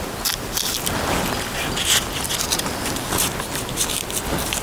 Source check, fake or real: real